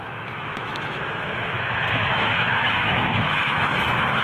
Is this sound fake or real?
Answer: fake